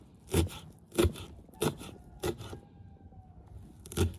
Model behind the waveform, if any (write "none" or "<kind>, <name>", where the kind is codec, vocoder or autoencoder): none